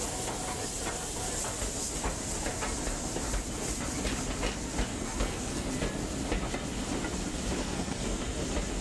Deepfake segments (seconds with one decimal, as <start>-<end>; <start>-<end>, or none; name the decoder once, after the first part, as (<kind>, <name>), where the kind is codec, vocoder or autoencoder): 4.9-5.7 (codec, SNAC); 7.6-8.2